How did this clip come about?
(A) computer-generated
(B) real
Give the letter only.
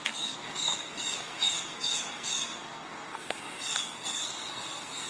A